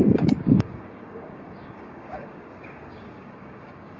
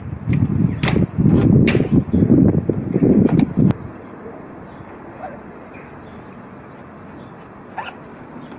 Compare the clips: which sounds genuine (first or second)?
second